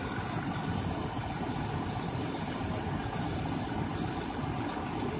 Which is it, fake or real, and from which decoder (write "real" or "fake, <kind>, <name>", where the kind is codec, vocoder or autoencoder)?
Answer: real